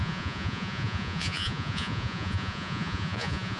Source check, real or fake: fake